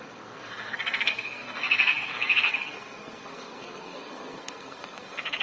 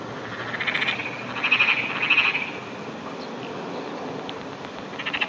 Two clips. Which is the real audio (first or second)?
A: second